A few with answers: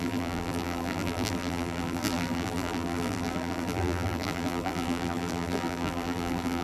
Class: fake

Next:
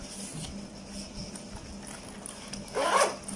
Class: real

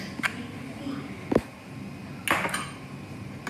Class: real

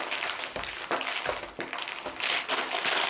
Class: real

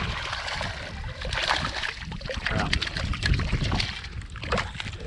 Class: real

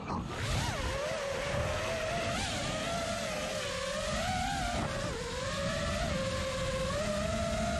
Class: real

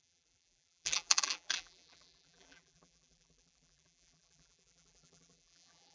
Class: fake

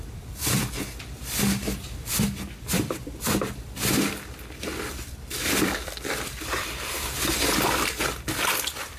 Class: fake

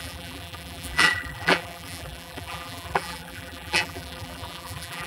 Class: fake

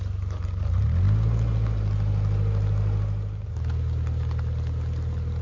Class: real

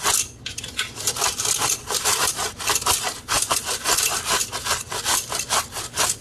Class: real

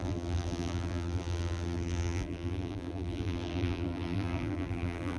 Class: fake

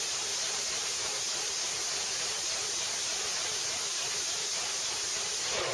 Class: real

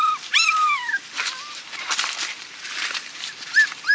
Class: fake